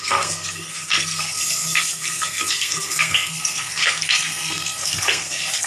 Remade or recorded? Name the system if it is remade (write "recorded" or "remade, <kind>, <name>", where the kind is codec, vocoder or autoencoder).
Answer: remade, codec, SNAC